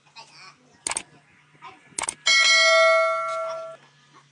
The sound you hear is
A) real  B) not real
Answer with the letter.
A